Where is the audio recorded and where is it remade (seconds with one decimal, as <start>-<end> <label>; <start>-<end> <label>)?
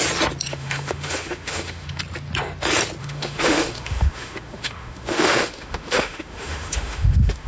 0.0-0.5 recorded; 0.5-2.0 remade; 2.0-3.0 recorded; 3.0-7.5 remade